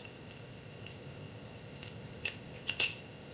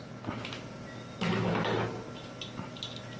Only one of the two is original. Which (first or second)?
second